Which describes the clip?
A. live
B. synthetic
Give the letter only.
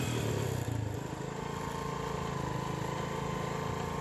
A